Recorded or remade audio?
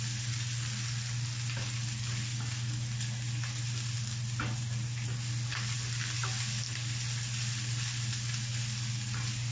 recorded